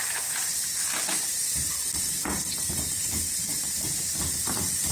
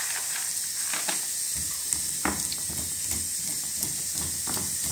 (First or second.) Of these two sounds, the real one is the second